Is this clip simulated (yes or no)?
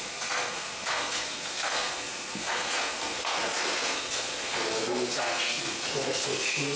yes